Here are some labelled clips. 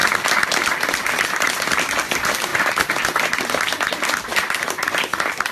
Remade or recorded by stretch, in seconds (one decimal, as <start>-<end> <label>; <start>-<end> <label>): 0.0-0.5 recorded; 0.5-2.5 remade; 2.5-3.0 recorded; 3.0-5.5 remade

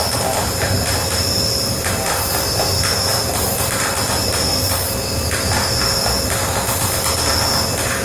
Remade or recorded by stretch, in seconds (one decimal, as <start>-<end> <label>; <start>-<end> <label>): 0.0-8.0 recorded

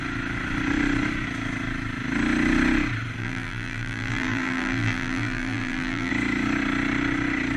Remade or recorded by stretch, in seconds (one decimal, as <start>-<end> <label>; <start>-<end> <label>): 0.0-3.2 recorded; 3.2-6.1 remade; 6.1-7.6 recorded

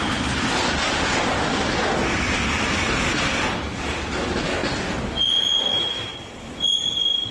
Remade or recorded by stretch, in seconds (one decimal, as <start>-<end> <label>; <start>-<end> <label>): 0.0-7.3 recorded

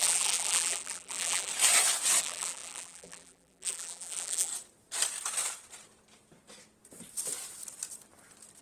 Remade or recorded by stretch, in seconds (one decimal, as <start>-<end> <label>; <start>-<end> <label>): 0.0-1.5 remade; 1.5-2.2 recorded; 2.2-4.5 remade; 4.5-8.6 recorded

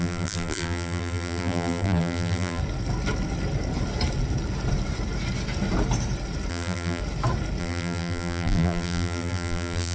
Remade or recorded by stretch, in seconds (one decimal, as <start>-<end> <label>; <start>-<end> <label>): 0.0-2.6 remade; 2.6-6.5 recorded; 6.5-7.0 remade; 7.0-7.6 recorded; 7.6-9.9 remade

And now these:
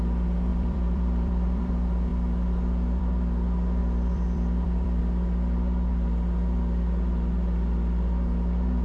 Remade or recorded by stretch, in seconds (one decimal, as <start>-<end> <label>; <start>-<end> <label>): 0.0-0.5 recorded; 0.5-1.7 remade; 1.7-3.8 recorded; 3.8-5.0 remade; 5.0-8.8 recorded

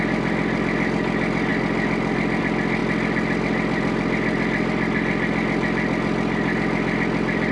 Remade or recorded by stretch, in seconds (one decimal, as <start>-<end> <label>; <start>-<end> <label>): 0.0-7.5 recorded